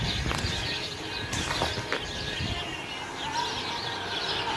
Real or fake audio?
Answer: real